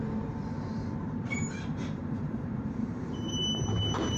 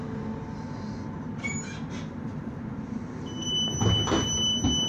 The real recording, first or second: second